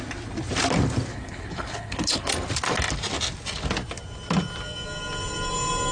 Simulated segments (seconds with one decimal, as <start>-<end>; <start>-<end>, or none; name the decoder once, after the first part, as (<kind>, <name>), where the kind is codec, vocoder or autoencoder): 1.1-2.3 (codec, HILCodec)